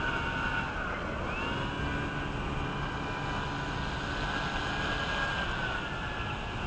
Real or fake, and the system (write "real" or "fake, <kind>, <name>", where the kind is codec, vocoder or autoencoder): real